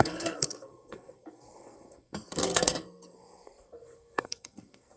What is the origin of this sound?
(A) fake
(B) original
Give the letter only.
A